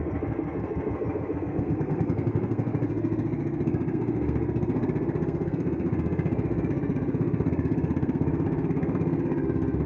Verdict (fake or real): fake